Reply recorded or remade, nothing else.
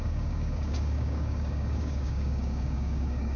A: remade